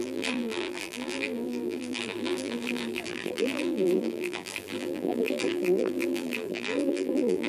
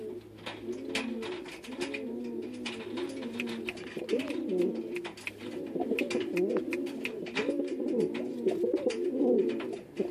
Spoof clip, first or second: first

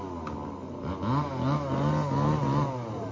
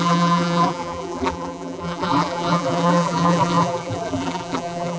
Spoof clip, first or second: second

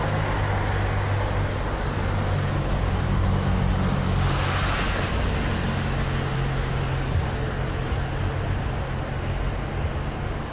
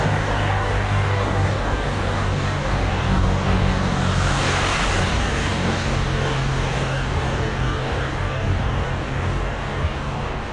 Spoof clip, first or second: second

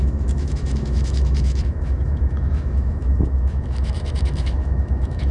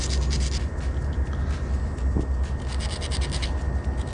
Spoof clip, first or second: first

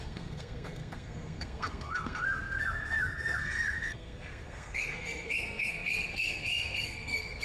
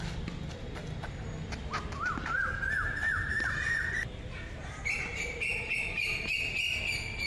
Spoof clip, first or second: first